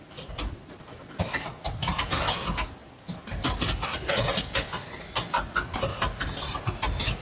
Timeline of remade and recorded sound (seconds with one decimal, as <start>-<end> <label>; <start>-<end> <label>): 0.0-2.8 recorded; 2.8-4.1 remade; 4.1-7.2 recorded